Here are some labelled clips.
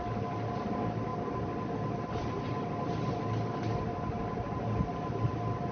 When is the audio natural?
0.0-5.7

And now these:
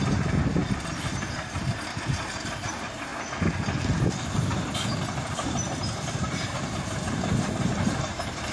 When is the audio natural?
0.6-1.9; 3.1-5.3

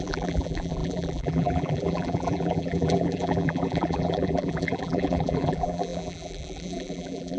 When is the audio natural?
none

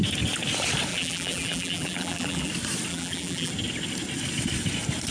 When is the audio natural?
0.0-0.9; 2.5-2.9; 3.5-5.1

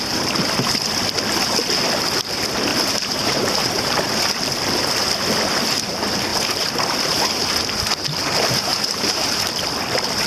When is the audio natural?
0.0-2.7; 4.2-6.3; 7.3-8.7; 9.5-10.3